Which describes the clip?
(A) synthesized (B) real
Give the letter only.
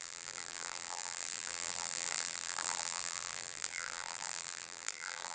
A